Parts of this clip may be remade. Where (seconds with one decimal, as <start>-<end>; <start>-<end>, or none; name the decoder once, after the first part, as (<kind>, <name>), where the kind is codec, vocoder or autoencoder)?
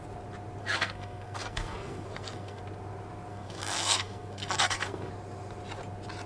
0.6-2.6 (codec, SNAC); 3.3-5.1